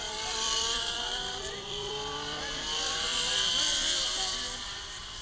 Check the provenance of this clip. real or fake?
fake